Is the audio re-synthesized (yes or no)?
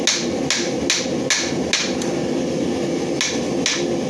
no